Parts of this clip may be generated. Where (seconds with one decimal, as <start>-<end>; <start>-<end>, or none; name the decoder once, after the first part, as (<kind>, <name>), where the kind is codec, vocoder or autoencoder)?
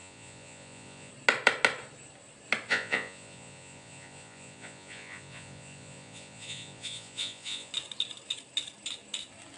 0.0-1.1 (vocoder, Vocos); 2.7-7.7